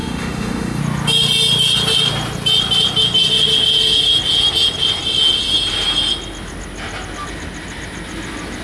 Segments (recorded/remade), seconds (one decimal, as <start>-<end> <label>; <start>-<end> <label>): 0.0-0.8 remade; 0.8-8.6 recorded